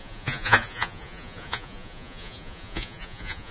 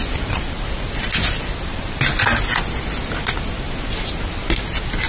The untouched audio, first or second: second